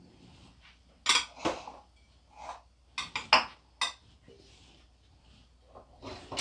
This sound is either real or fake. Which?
real